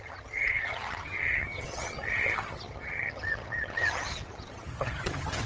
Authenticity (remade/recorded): remade